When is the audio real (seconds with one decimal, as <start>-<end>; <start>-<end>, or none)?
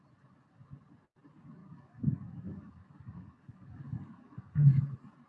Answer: 0.0-1.6; 4.8-5.3